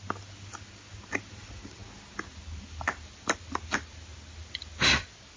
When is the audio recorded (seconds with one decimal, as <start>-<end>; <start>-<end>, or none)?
0.0-5.4